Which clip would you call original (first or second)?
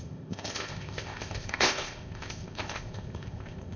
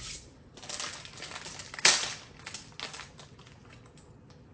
second